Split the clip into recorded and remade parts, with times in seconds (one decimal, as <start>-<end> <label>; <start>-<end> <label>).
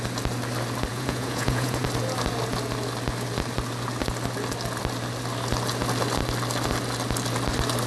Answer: 0.0-0.9 recorded; 0.9-1.8 remade; 1.8-7.9 recorded